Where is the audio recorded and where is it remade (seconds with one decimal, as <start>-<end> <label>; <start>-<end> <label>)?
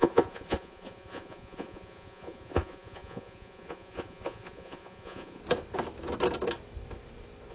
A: 0.0-5.4 remade; 5.4-7.5 recorded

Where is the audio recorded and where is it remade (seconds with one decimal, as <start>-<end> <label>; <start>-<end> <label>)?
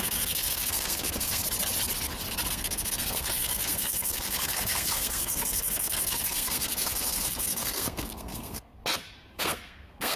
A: 0.0-1.4 remade; 1.4-2.5 recorded; 2.5-8.8 remade; 8.8-9.4 recorded; 9.4-10.2 remade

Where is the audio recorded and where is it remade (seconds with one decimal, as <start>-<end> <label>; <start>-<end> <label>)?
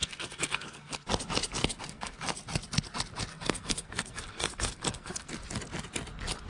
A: 0.0-1.1 remade; 1.1-1.6 recorded; 1.6-2.2 remade; 2.2-3.3 recorded; 3.3-5.3 remade; 5.3-6.5 recorded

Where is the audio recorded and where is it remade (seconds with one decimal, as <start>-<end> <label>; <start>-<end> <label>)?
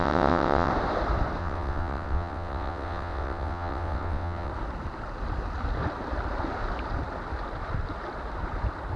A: 0.0-0.7 remade; 0.7-1.4 recorded; 1.4-4.5 remade; 4.5-9.0 recorded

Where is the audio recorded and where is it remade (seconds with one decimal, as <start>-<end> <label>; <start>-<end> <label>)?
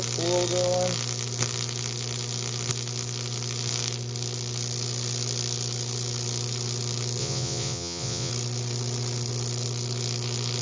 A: 0.0-7.2 recorded; 7.2-8.3 remade; 8.3-10.6 recorded